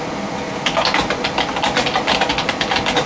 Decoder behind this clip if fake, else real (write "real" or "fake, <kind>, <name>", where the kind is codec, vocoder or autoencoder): real